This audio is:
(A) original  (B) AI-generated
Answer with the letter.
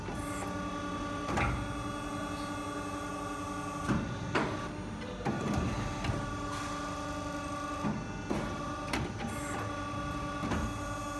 A